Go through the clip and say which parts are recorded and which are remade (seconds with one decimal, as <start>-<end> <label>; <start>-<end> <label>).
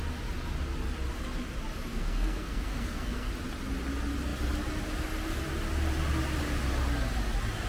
0.0-1.9 recorded; 1.9-3.3 remade; 3.3-7.7 recorded